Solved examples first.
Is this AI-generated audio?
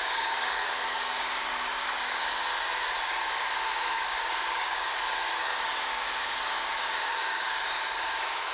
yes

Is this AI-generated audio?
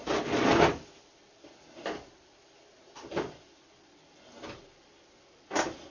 no